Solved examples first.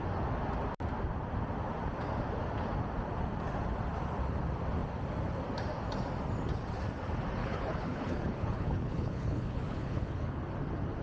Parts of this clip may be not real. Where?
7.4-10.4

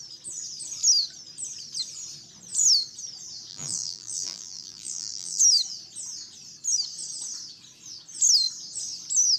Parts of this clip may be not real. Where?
3.5-5.4

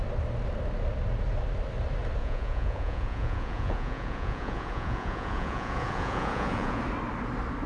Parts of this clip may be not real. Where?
2.2-6.8

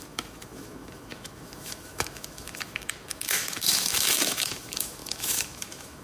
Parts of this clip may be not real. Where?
0.0-6.0

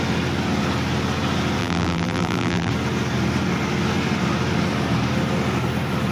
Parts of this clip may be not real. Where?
1.6-2.7

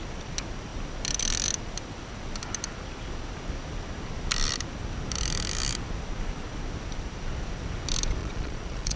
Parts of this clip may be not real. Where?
8.2-9.0

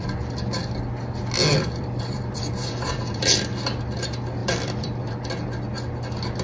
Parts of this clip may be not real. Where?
1.5-3.4; 4.4-5.1

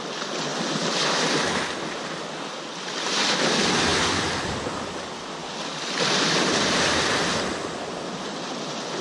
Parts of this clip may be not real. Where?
none